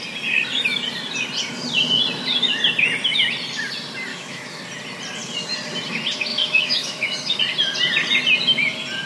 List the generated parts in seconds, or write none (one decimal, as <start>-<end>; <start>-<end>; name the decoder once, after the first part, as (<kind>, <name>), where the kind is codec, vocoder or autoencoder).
4.1-4.6 (autoencoder, DAC-VAE); 6.3-7.4